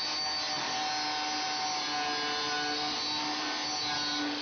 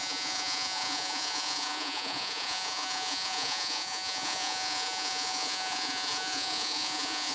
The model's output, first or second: second